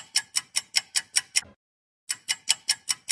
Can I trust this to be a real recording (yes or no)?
yes